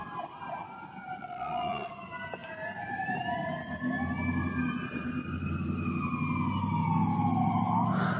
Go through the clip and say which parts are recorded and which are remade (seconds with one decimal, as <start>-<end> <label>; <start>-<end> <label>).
0.0-1.2 recorded; 1.2-1.9 remade; 1.9-8.2 recorded